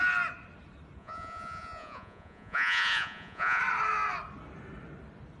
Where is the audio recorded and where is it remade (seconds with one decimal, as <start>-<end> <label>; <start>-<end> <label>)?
0.0-1.0 recorded; 1.0-3.6 remade; 3.6-5.4 recorded